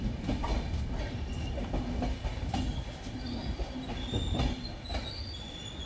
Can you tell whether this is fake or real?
real